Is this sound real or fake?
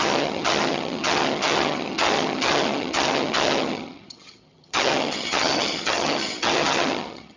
fake